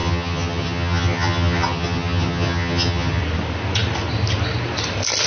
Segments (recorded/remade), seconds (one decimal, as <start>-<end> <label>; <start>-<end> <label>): 0.0-3.2 remade; 3.2-5.3 recorded